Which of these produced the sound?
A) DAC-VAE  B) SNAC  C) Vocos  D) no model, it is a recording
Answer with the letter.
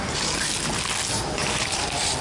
D